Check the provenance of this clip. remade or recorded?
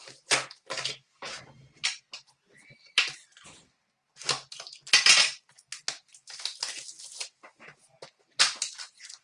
recorded